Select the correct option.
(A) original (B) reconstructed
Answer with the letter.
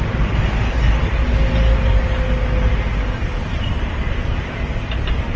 A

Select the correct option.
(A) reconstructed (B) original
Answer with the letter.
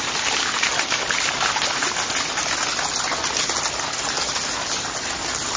B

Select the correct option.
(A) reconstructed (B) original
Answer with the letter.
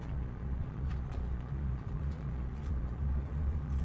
A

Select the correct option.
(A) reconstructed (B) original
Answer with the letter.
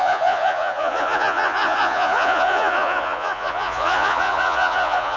A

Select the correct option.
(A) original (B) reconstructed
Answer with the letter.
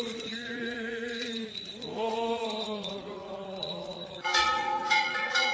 B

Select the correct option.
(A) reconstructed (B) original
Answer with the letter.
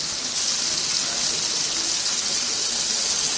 B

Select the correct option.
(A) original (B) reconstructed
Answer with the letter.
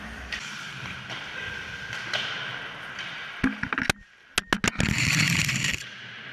A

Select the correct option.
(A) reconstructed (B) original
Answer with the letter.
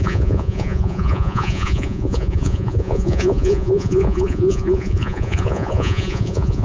A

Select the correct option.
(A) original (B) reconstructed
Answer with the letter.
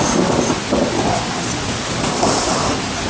A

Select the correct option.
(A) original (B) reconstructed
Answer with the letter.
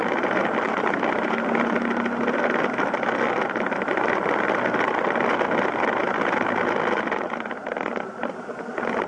A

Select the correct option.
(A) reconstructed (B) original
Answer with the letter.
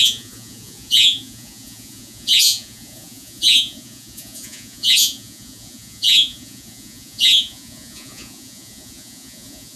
A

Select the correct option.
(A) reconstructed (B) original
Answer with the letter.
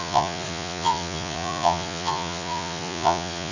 A